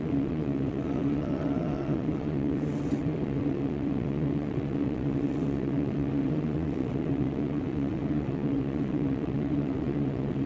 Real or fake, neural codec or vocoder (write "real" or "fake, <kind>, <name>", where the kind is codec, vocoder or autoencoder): fake, vocoder, WaveNeXt